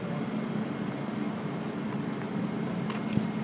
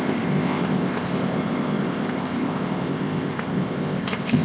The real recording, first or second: first